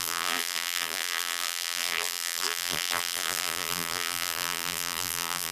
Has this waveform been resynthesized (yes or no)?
yes